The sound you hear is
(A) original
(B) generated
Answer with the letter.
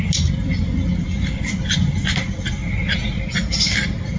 A